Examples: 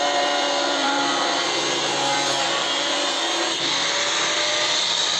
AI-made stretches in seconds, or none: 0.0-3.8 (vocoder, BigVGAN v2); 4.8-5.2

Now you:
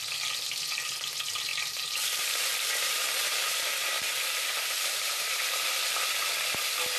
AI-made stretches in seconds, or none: 1.5-5.7 (vocoder, BigVGAN v2)

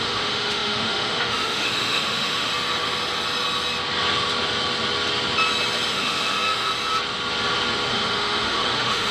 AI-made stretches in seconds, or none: 0.0-2.5 (autoencoder, DAC-VAE); 5.9-6.7; 7.9-9.1

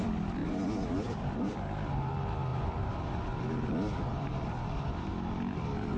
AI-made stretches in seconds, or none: 0.4-2.1 (vocoder, BigVGAN v2); 2.5-3.4; 4.1-5.1

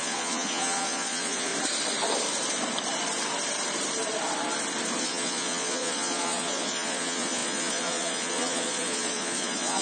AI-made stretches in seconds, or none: 0.0-1.5 (vocoder, Vocos); 5.0-9.8

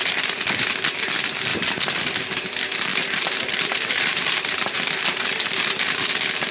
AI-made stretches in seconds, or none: 1.5-2.1 (vocoder, BigVGAN v2); 2.9-6.1